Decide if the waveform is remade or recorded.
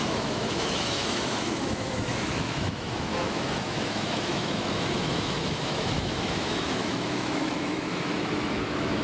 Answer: remade